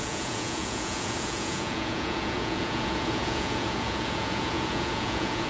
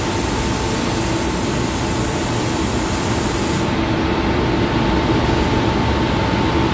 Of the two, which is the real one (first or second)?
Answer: second